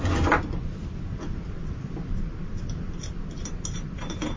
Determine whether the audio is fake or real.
real